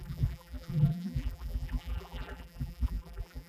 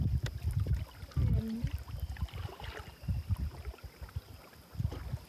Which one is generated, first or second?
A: first